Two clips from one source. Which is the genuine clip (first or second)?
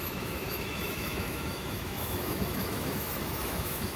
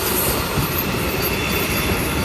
second